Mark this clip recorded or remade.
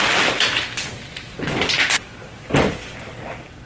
recorded